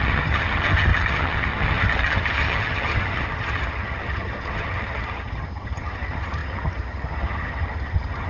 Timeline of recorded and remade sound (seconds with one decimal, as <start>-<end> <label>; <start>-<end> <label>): 0.0-8.3 remade